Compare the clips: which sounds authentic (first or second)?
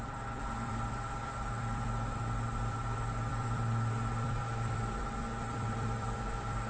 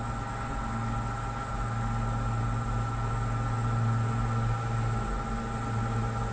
second